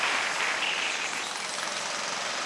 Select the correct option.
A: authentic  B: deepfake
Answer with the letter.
A